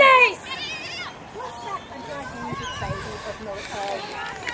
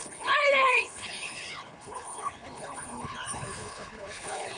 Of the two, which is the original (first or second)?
first